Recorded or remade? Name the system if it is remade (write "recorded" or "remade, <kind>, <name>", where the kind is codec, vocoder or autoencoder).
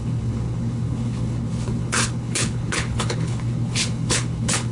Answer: remade, codec, HILCodec